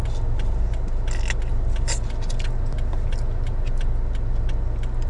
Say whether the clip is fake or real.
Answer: real